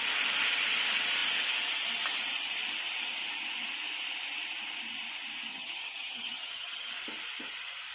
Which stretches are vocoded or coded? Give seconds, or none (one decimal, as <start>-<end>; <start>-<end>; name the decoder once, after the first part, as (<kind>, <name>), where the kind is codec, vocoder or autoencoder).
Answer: 5.5-6.9 (vocoder, HiFi-GAN)

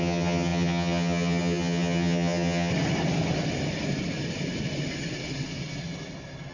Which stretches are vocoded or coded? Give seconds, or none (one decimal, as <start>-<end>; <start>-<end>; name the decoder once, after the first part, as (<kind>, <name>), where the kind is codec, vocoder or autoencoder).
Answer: 0.0-2.7 (vocoder, HiFi-GAN)

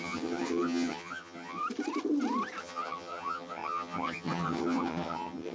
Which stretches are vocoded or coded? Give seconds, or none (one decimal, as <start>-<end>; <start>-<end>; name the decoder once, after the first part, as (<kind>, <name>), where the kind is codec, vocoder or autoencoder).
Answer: 0.0-1.6 (vocoder, HiFi-GAN); 2.6-5.5

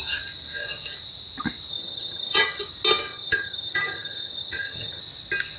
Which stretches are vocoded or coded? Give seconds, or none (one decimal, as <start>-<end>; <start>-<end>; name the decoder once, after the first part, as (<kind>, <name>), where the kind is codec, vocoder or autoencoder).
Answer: 1.7-2.6 (vocoder, HiFi-GAN); 3.1-5.0

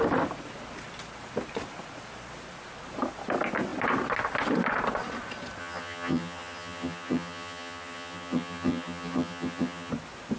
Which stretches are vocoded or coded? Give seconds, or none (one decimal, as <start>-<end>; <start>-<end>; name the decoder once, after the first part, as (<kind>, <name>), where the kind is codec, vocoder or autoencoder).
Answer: 5.6-9.9 (vocoder, HiFi-GAN)

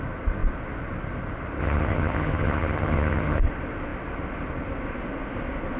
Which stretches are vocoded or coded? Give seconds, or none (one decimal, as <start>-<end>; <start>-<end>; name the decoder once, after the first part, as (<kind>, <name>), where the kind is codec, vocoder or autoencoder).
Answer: 1.6-3.4 (vocoder, HiFi-GAN)

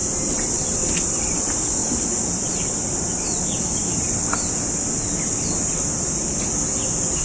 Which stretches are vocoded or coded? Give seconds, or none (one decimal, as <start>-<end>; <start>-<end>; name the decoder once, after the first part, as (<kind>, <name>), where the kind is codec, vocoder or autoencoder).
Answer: none